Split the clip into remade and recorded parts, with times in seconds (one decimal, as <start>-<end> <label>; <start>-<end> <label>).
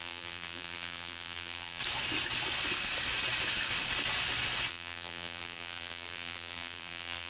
0.0-1.8 remade; 1.8-4.7 recorded; 4.7-7.3 remade